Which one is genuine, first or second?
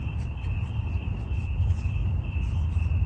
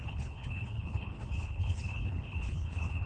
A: first